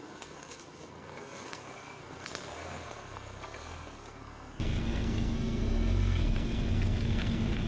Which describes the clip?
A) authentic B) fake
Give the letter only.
B